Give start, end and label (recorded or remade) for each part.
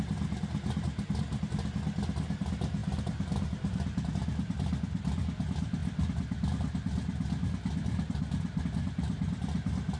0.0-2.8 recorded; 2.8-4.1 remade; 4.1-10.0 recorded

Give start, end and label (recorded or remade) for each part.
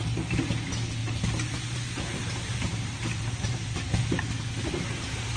0.0-1.0 recorded; 1.0-4.2 remade; 4.2-5.4 recorded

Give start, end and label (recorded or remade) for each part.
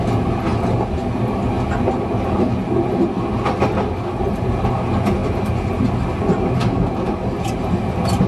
0.0-8.3 recorded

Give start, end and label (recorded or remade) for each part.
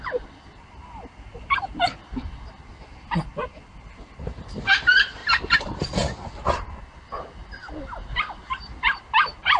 0.0-1.3 recorded; 1.3-2.4 remade; 2.4-9.6 recorded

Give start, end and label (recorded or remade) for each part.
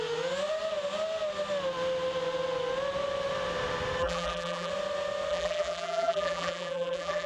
0.0-4.0 recorded; 4.0-4.7 remade; 4.7-5.3 recorded; 5.3-7.3 remade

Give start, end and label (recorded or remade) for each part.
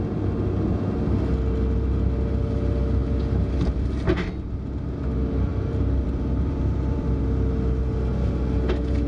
0.0-5.5 recorded; 5.5-7.2 remade; 7.2-9.1 recorded